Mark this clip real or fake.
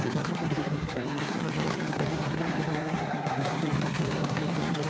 fake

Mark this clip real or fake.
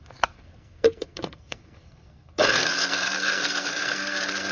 fake